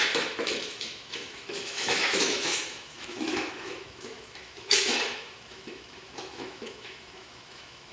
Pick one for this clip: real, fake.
fake